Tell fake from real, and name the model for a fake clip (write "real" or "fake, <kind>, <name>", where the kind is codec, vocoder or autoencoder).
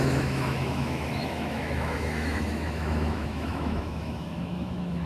fake, autoencoder, DAC-VAE